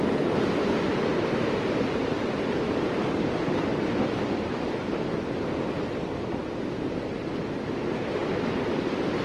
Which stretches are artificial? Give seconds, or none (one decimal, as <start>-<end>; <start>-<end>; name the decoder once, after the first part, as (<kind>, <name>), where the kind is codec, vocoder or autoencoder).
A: 0.9-4.8 (vocoder, BigVGAN v2); 8.2-9.2